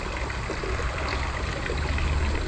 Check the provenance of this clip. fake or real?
real